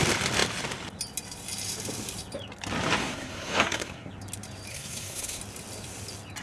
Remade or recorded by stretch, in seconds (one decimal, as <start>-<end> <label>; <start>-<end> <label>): 0.0-3.0 recorded; 3.0-4.1 remade; 4.1-4.7 recorded; 4.7-5.4 remade; 5.4-6.4 recorded